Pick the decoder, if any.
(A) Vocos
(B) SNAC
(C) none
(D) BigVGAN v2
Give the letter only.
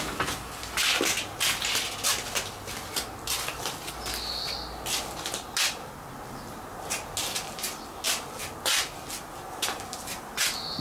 C